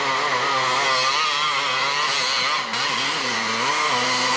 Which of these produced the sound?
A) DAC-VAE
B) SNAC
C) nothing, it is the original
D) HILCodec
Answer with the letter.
C